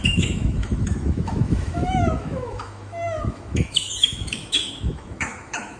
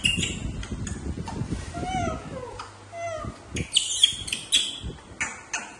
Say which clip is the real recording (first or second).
second